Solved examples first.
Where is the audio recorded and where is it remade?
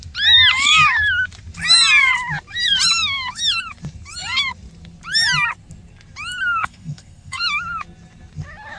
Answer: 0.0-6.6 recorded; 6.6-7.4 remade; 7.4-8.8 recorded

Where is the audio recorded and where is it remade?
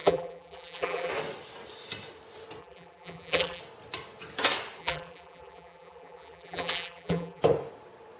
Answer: 0.0-1.1 remade; 1.1-2.6 recorded; 2.6-3.6 remade; 3.6-4.8 recorded; 4.8-7.4 remade; 7.4-8.2 recorded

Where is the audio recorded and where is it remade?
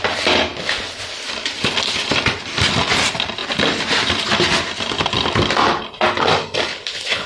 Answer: 0.0-6.7 recorded; 6.7-7.3 remade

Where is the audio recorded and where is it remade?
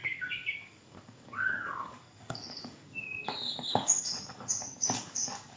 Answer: 0.0-5.6 remade